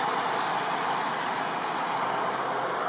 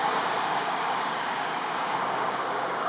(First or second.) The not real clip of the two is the second